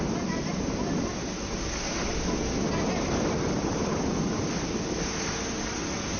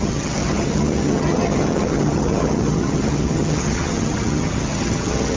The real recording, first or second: first